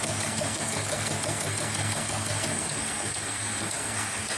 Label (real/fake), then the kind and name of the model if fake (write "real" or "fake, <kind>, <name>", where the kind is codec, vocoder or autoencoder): fake, codec, SNAC